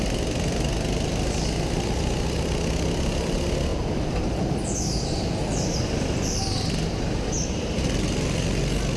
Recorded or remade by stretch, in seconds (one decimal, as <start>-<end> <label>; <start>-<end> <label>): 0.0-9.0 recorded